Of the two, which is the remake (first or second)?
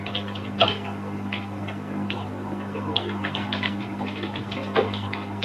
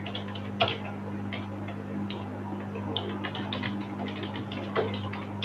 first